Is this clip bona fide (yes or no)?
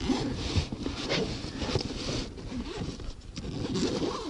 yes